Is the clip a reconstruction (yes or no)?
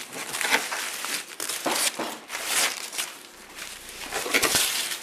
yes